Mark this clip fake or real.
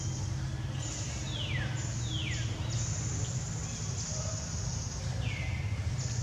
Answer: real